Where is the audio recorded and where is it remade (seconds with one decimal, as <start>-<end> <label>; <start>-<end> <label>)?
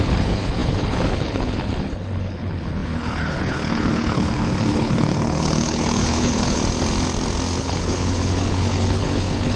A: 0.0-6.6 remade; 6.6-7.6 recorded; 7.6-9.6 remade